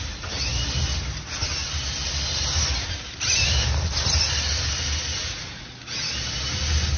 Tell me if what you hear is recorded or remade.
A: recorded